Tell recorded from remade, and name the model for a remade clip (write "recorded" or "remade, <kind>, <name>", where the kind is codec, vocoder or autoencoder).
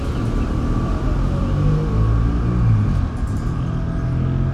recorded